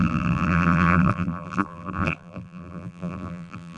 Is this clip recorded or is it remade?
remade